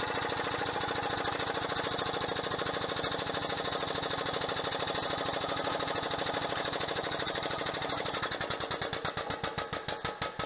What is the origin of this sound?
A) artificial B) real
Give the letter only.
B